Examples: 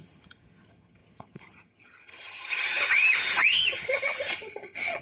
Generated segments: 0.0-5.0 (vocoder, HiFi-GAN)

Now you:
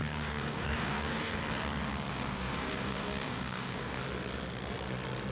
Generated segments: 0.0-1.4 (codec, DAC); 2.1-4.0